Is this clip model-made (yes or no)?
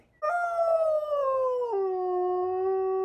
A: no